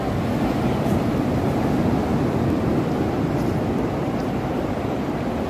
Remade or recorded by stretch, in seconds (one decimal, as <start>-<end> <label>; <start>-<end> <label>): 0.0-2.1 recorded; 2.1-5.5 remade